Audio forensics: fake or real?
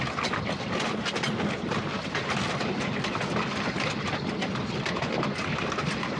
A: real